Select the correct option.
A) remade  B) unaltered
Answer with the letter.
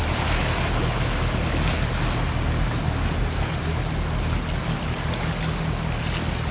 B